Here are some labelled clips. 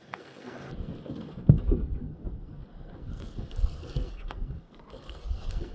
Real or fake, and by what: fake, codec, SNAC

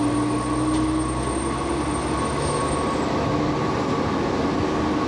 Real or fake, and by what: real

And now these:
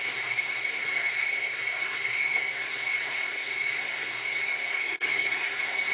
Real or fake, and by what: fake, codec, SNAC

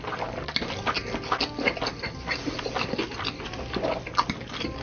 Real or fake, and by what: real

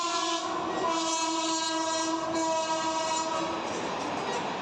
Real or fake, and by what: real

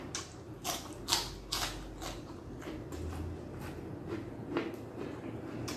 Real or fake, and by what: real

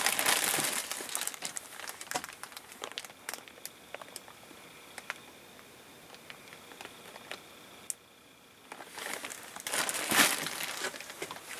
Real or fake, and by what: real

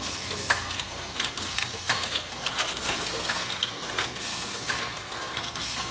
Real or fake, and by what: fake, codec, SNAC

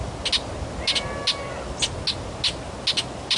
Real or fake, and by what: real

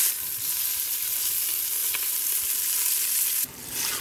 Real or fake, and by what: real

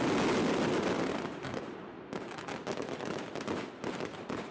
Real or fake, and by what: real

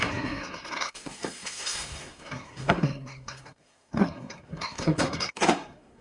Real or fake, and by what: fake, codec, SNAC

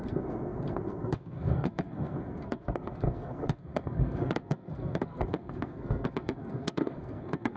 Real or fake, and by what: fake, codec, SNAC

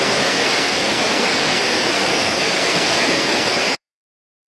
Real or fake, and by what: fake, codec, SNAC